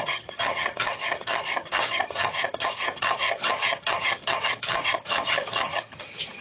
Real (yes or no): no